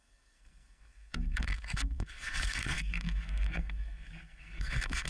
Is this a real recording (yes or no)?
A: no